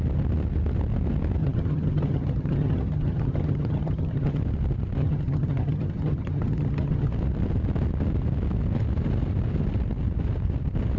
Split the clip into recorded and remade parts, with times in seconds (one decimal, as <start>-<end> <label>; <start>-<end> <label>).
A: 0.0-1.4 recorded; 1.4-4.4 remade; 4.4-5.0 recorded; 5.0-7.1 remade; 7.1-11.0 recorded